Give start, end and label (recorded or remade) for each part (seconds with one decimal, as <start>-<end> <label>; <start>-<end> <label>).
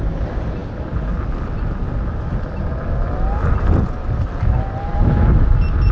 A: 0.0-5.9 recorded